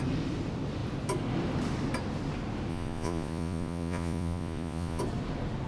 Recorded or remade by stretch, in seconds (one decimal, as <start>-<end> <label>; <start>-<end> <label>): 0.0-2.7 recorded; 2.7-5.0 remade; 5.0-5.7 recorded